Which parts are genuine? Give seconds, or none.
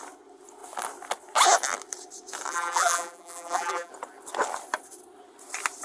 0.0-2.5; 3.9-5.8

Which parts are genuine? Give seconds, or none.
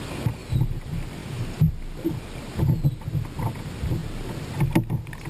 0.0-5.3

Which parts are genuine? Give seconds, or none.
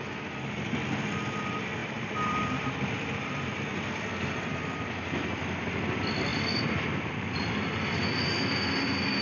0.0-1.8; 2.7-6.3; 8.2-9.2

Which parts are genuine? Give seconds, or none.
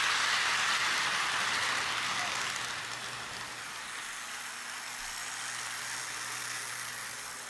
0.0-7.5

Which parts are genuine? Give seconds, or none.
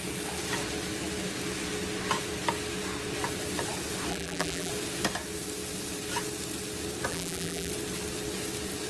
0.0-4.1; 4.7-7.1; 7.7-8.9